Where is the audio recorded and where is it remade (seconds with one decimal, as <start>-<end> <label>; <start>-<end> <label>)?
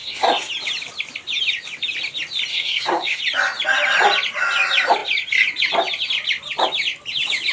0.0-0.5 remade; 0.5-2.5 recorded; 2.5-3.2 remade; 3.2-7.5 recorded